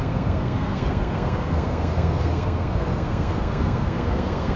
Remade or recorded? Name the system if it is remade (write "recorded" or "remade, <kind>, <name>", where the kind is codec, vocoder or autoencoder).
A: remade, codec, SNAC